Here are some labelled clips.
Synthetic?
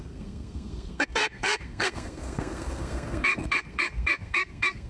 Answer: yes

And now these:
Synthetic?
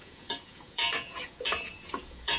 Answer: yes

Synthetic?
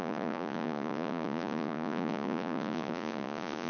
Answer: yes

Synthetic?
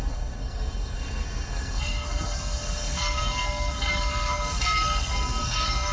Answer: yes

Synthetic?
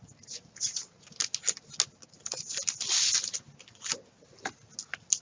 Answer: no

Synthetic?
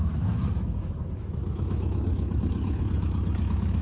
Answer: yes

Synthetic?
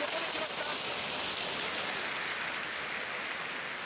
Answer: no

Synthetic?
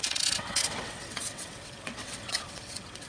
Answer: yes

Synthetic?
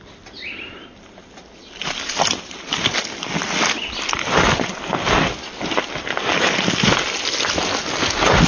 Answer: no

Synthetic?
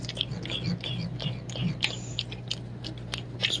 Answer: no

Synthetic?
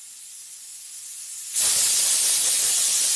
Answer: no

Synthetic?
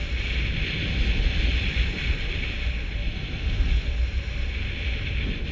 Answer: no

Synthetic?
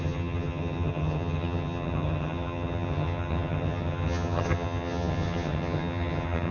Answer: yes